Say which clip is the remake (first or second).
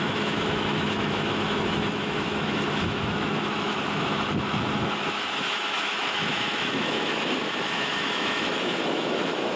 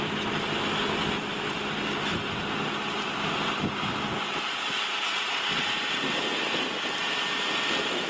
first